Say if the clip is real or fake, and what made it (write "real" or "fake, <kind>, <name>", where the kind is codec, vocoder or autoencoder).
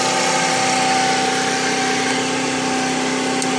real